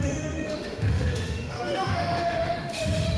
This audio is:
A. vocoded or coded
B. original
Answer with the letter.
A